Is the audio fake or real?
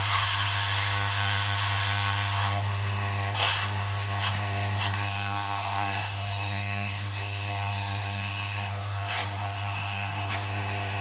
fake